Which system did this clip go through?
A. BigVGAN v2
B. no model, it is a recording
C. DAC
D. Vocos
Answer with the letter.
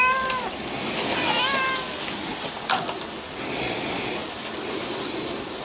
B